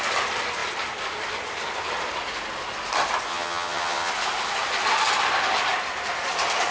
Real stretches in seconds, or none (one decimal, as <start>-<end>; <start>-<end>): 0.0-3.3; 4.1-6.7